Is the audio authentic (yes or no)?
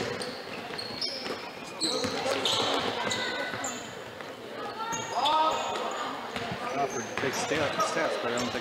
yes